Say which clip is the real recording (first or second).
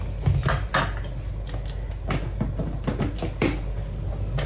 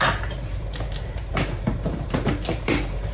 first